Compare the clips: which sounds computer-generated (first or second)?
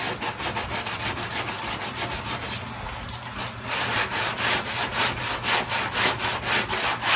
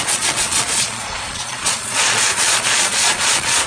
second